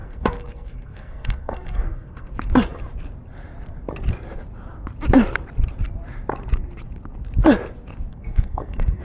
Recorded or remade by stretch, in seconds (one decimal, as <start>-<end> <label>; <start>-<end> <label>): 0.0-2.3 remade; 2.3-8.1 recorded; 8.1-9.0 remade